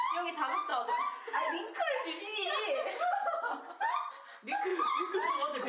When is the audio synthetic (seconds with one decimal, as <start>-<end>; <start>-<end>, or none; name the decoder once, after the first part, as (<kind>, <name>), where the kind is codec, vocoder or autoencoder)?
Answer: 4.7-5.3 (vocoder, Vocos)

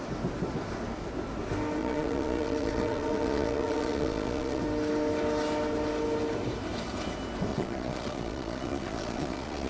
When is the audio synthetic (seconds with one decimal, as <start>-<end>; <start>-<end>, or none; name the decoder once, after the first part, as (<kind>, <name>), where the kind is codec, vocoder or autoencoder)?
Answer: 1.8-4.6 (vocoder, Vocos); 7.5-9.7

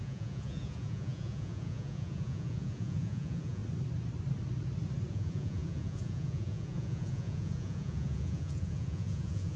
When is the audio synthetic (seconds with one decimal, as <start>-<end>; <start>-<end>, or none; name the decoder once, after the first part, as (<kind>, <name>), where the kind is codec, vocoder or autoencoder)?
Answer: 0.0-3.6 (vocoder, Vocos); 5.1-9.6

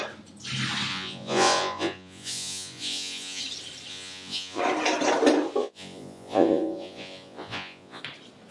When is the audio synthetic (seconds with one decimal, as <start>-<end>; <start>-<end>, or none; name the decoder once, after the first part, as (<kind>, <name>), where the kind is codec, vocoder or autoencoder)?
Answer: 0.9-3.4 (vocoder, Vocos); 3.9-4.6; 5.6-8.0

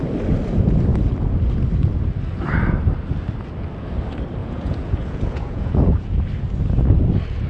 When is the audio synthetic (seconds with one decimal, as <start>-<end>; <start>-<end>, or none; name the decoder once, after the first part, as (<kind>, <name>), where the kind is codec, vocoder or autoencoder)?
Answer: 4.4-6.2 (vocoder, Vocos)

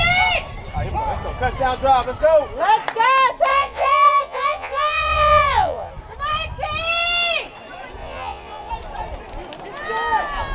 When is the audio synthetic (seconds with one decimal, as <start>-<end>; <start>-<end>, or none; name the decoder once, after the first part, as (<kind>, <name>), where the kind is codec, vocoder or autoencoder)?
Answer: 3.5-5.9 (vocoder, Vocos); 8.0-8.7

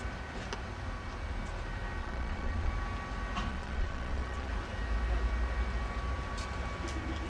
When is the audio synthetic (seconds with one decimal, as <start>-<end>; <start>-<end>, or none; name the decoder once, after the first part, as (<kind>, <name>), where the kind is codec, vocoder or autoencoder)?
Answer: 2.0-2.7 (vocoder, Vocos); 3.5-4.5